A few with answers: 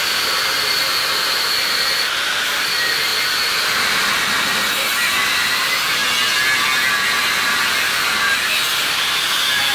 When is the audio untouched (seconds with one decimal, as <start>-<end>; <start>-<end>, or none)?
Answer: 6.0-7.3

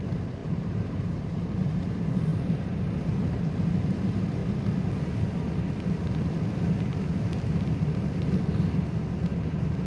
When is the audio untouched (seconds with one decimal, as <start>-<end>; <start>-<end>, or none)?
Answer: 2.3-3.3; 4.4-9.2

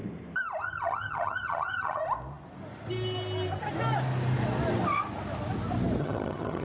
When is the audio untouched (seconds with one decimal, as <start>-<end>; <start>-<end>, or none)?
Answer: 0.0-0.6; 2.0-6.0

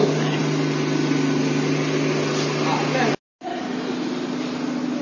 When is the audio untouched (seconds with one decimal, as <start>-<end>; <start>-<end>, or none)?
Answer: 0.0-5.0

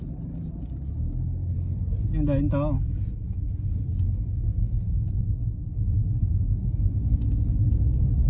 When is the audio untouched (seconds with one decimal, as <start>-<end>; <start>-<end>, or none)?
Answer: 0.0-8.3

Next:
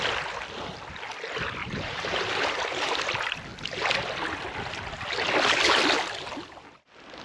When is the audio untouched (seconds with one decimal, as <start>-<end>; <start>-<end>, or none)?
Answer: 0.0-1.6; 2.9-7.2

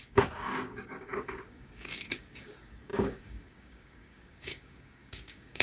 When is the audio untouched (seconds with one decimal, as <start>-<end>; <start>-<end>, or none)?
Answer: none